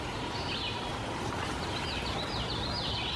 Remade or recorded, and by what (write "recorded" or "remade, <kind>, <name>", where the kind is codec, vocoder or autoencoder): recorded